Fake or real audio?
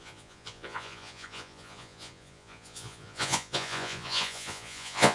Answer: fake